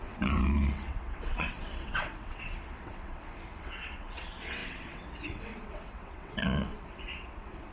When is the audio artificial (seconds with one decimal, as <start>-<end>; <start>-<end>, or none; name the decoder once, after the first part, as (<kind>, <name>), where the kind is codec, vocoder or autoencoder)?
0.0-7.7 (vocoder, WaveNeXt)